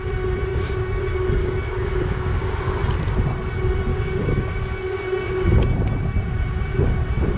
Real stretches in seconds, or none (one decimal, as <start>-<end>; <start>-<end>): 0.0-0.5; 1.0-1.4; 2.6-3.9; 5.6-7.4